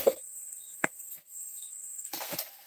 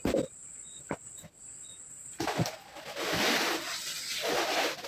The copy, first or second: first